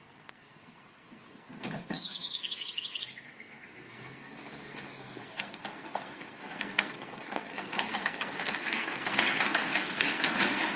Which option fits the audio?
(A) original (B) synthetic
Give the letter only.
B